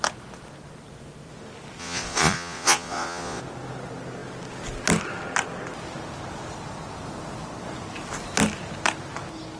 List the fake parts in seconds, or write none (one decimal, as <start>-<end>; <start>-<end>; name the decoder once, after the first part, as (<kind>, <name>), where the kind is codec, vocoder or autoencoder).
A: 1.8-3.4 (vocoder, Vocos)